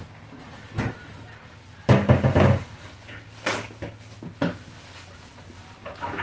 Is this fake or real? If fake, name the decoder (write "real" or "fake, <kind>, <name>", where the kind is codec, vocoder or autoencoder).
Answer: real